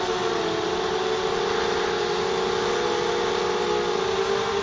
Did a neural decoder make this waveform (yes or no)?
no